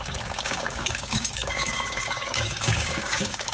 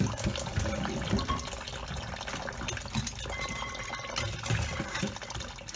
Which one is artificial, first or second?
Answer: first